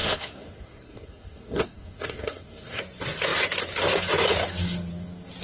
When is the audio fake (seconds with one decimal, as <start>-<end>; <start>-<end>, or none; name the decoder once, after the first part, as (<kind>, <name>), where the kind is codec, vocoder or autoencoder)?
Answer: 0.0-2.8 (codec, SNAC)